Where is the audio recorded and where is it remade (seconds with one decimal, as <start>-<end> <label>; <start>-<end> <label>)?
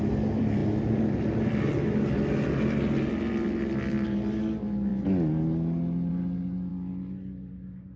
0.0-8.0 recorded